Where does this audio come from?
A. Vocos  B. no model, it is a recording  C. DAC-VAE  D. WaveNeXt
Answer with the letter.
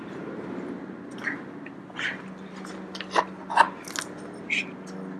B